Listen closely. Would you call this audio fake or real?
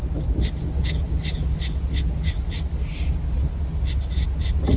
real